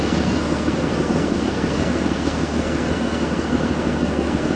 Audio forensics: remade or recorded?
remade